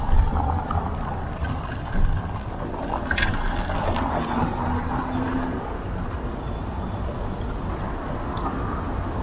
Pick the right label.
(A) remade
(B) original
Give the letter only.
B